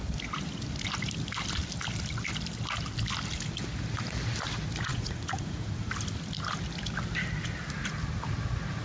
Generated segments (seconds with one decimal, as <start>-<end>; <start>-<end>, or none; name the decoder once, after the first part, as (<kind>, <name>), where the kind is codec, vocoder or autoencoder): 4.9-5.9 (vocoder, Vocos)